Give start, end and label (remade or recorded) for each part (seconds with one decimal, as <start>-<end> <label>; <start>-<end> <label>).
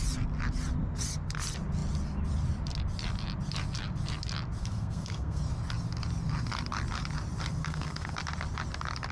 0.0-4.6 recorded; 4.6-5.4 remade; 5.4-7.6 recorded; 7.6-8.2 remade; 8.2-9.1 recorded